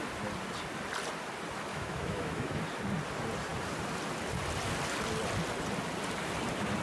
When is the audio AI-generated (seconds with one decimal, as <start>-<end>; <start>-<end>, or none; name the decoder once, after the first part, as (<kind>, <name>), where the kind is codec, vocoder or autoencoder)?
1.7-2.6 (autoencoder, DAC-VAE)